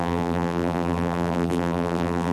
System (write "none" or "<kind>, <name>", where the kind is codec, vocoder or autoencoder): vocoder, BigVGAN v2